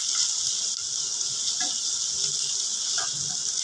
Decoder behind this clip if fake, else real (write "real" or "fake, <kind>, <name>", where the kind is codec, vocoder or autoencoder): real